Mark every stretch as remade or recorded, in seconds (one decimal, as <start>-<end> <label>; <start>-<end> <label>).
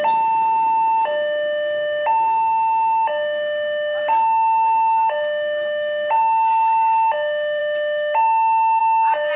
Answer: 0.0-9.4 recorded